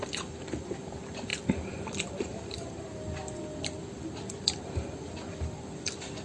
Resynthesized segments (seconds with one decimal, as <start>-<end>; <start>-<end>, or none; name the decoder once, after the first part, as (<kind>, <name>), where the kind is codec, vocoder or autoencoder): 0.0-6.2 (vocoder, BigVGAN v2)